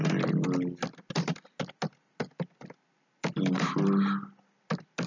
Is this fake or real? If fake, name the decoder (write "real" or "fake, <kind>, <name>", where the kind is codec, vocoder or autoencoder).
real